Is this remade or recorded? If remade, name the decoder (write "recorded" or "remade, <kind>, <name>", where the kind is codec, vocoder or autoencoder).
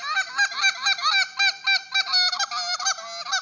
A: recorded